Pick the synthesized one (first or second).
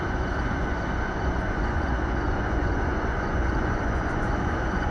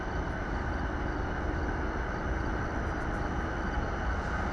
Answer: first